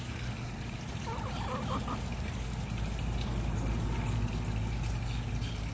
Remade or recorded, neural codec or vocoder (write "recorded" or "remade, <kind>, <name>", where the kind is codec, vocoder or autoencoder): recorded